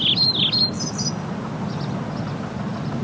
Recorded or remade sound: recorded